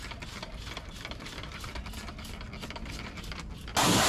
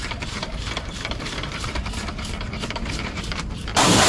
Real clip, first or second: first